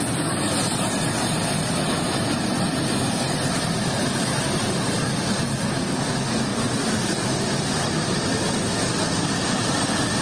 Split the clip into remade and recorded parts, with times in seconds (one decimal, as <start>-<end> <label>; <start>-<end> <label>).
0.0-10.2 recorded